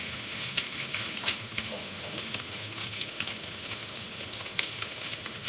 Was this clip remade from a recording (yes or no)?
yes